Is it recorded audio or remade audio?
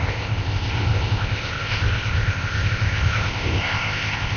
remade